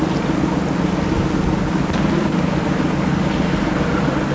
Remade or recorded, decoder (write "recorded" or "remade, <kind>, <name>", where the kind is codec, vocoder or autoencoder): recorded